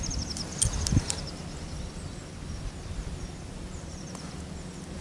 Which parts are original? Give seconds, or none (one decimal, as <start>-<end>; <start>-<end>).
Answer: 2.2-3.5

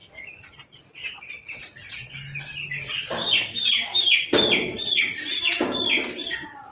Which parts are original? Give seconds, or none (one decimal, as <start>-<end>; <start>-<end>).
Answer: 0.0-6.7

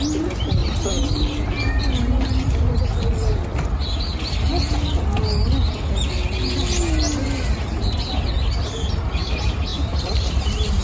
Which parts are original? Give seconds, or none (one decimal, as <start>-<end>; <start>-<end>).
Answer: 0.0-0.6; 1.8-9.7; 10.3-10.8

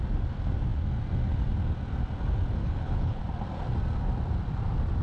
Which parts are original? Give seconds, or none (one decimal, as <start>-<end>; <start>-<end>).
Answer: 0.0-2.6; 3.2-5.0